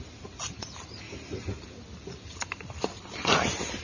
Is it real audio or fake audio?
real